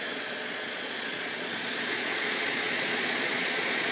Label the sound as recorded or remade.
remade